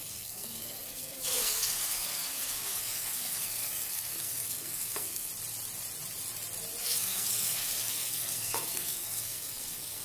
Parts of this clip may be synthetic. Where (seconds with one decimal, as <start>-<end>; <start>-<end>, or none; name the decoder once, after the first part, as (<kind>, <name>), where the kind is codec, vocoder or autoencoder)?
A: 0.0-5.3 (codec, SNAC); 6.8-10.0